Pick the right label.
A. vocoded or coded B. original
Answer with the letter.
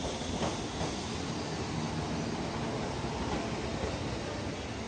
B